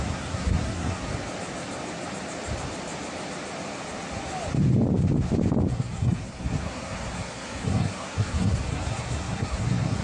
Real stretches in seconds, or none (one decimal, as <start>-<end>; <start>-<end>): 1.1-5.7